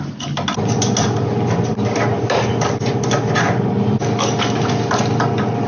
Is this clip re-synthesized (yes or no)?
no